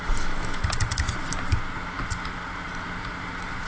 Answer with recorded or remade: recorded